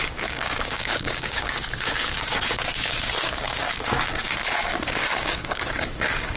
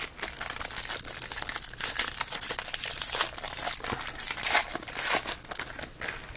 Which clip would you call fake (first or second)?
first